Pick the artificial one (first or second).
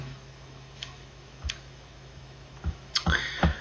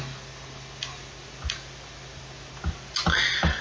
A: first